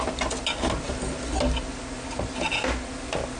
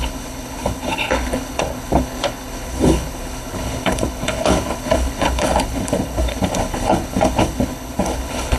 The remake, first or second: second